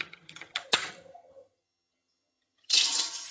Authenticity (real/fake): fake